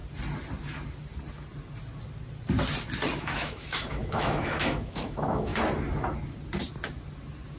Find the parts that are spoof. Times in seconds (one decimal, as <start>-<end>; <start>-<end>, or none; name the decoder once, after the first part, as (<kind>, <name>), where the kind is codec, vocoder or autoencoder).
3.2-5.5 (autoencoder, DAC-VAE)